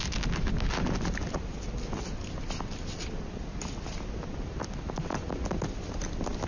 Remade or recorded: recorded